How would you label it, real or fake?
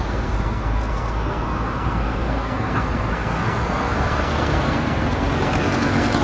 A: fake